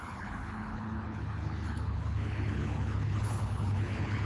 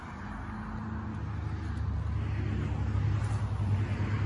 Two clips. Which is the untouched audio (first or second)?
second